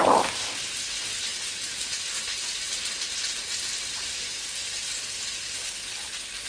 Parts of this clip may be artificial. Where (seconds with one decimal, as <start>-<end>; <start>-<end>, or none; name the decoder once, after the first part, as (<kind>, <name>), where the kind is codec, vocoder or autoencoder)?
none